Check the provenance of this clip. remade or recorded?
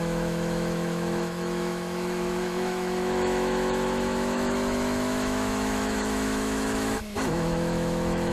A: remade